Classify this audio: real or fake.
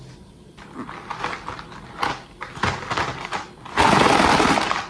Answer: real